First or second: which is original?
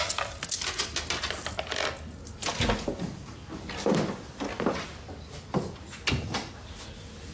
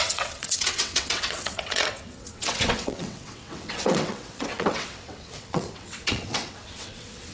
first